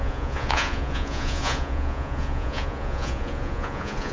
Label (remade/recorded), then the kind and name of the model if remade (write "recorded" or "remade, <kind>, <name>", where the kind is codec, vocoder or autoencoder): remade, vocoder, Vocos